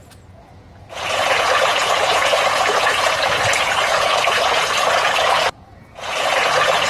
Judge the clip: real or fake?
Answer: fake